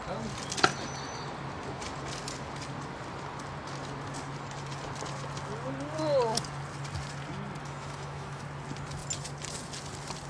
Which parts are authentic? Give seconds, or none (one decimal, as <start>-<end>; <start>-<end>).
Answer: 0.0-7.6; 8.4-10.3